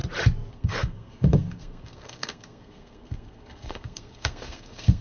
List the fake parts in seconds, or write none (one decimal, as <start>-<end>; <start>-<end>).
0.5-5.0